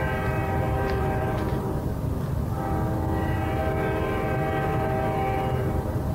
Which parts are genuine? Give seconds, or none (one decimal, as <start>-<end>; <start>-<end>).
0.0-0.4; 1.9-6.1